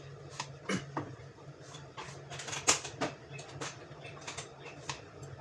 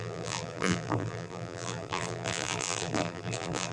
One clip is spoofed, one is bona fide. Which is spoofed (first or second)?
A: second